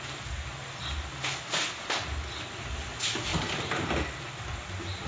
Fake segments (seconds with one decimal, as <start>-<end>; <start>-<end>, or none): none